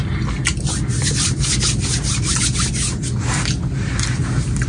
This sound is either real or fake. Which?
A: real